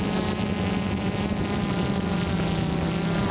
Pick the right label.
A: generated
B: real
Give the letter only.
B